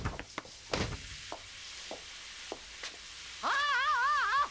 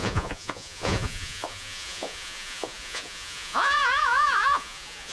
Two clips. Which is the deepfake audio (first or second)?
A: second